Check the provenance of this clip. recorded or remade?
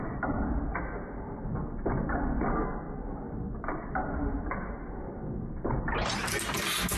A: recorded